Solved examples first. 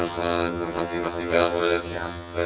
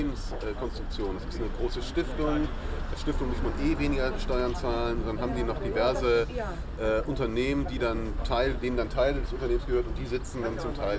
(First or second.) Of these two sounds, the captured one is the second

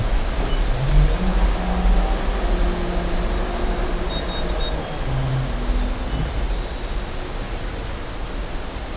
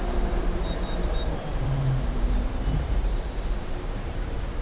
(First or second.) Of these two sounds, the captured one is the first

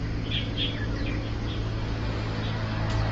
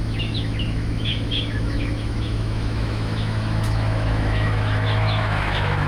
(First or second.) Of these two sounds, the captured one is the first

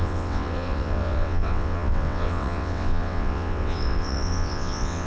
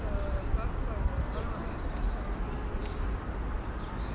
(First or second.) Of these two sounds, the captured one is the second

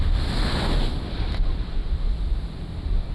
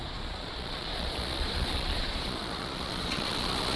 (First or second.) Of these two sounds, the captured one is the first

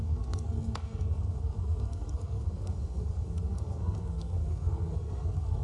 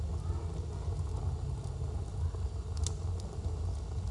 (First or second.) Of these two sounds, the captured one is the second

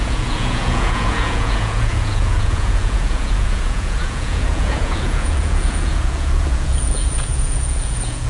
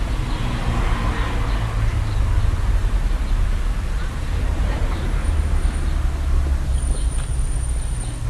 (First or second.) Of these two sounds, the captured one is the second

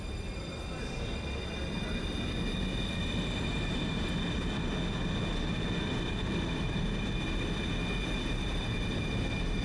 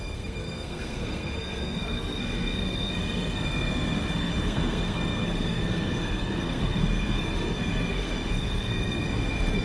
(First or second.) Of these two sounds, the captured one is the first